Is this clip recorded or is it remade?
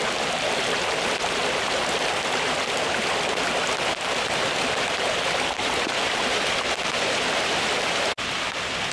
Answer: recorded